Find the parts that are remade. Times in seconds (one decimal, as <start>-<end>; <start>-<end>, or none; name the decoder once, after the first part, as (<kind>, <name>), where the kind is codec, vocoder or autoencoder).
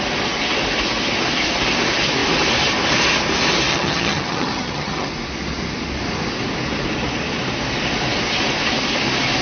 3.7-5.1 (vocoder, HiFi-GAN)